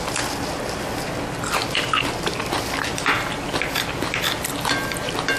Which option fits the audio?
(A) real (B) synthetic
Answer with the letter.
A